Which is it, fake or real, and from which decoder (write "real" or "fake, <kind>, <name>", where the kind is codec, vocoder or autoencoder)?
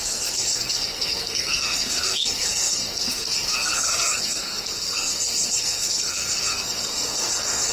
fake, codec, SNAC